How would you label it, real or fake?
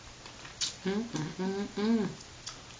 real